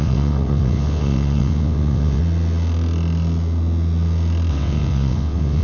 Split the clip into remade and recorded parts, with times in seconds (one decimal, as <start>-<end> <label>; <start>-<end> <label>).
0.0-2.2 remade; 2.2-4.5 recorded; 4.5-5.6 remade